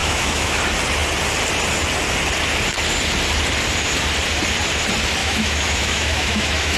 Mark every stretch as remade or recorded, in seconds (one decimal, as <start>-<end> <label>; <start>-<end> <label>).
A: 0.0-0.6 remade; 0.6-5.2 recorded; 5.2-6.8 remade